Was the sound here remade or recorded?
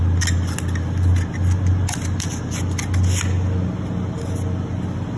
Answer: recorded